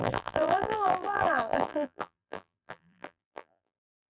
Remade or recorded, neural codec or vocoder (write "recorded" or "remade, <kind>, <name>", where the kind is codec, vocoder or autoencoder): remade, vocoder, BigVGAN v2